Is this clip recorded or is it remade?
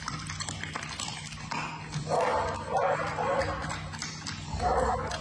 remade